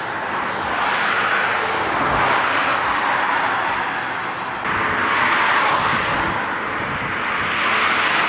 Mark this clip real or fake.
real